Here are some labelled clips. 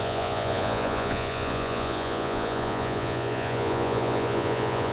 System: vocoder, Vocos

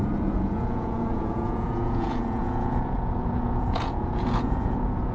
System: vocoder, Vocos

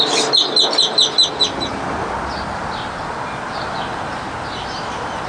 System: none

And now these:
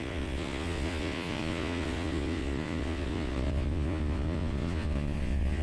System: vocoder, Vocos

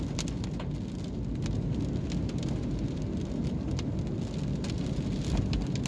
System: none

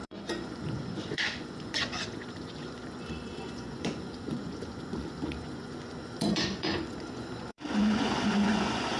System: vocoder, Vocos